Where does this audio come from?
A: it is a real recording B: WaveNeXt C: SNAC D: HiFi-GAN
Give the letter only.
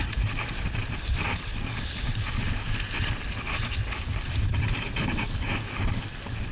A